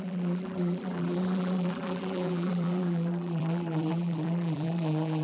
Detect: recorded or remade remade